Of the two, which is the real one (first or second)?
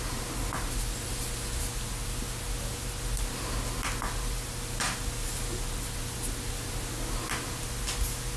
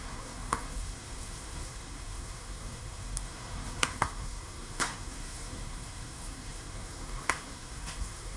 first